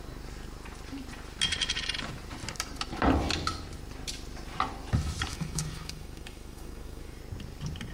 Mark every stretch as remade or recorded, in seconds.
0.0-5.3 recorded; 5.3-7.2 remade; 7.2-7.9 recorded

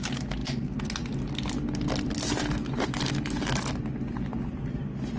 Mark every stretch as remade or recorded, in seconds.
0.0-5.2 recorded

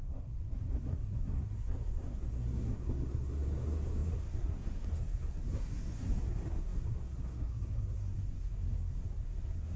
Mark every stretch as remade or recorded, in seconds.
0.0-9.8 remade

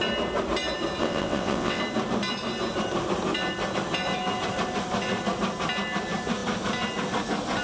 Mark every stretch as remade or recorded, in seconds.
0.0-1.0 recorded; 1.0-1.8 remade; 1.8-7.6 recorded

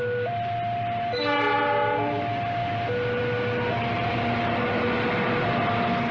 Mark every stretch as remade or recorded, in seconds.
0.0-6.1 recorded